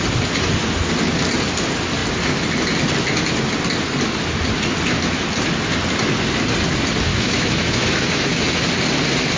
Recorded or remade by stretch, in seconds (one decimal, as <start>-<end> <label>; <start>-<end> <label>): 0.0-7.1 recorded; 7.1-8.6 remade; 8.6-9.4 recorded